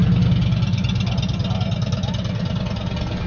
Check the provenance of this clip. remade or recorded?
recorded